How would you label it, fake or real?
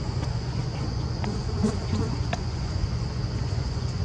fake